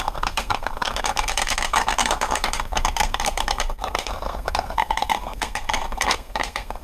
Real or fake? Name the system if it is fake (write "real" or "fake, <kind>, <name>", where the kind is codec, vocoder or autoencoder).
fake, codec, SNAC